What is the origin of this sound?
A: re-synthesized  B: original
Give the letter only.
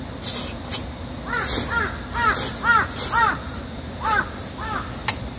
B